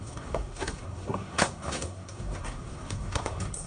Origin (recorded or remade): remade